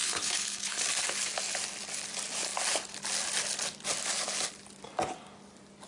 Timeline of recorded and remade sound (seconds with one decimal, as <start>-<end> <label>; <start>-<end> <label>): 0.0-0.8 remade; 0.8-5.9 recorded